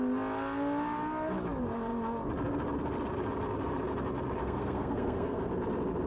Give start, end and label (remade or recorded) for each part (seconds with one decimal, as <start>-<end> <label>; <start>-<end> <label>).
0.0-4.4 recorded; 4.4-5.5 remade; 5.5-6.1 recorded